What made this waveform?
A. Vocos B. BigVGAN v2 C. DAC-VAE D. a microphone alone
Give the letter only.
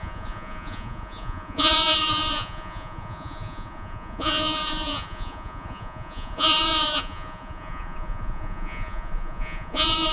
A